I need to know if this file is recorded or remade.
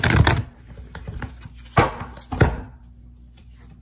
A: recorded